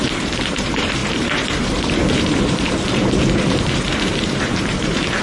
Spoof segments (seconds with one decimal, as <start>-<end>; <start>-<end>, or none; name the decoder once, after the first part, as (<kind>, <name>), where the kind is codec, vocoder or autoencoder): 0.0-5.2 (vocoder, BigVGAN v2)